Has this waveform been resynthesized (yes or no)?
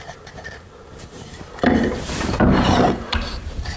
yes